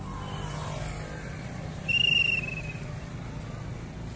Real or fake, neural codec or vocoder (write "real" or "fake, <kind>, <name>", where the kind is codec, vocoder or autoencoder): real